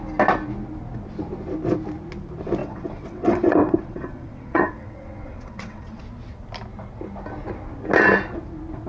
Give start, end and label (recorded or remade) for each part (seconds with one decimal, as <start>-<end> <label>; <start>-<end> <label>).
0.0-2.6 recorded; 2.6-6.0 remade; 6.0-8.9 recorded